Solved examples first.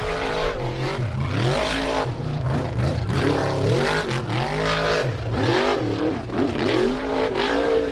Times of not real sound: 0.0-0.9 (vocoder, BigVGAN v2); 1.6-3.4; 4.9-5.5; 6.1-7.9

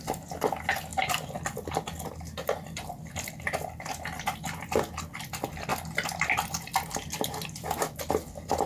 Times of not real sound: none

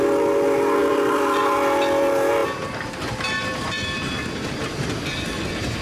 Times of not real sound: 0.8-1.4 (vocoder, BigVGAN v2); 2.4-5.0